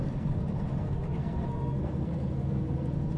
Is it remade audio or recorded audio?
remade